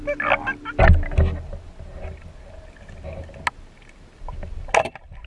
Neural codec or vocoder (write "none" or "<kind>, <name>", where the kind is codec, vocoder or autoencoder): none